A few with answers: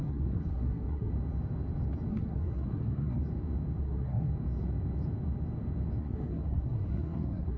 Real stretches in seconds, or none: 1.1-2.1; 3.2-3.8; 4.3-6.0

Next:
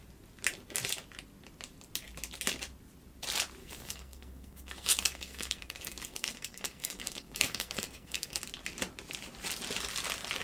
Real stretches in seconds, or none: 0.0-3.6; 8.4-10.4

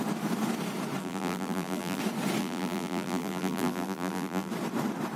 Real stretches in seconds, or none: 0.0-1.0; 2.0-2.4; 4.5-5.2

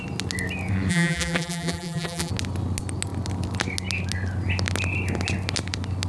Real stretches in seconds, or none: 0.0-0.9; 2.3-6.1